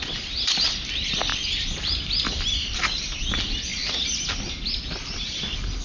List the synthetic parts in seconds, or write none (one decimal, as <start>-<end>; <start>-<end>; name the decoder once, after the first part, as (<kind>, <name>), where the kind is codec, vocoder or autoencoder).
1.3-3.2 (vocoder, BigVGAN v2)